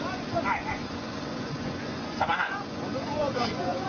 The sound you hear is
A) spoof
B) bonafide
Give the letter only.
A